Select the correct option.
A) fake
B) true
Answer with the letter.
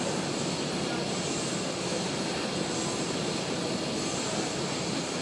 B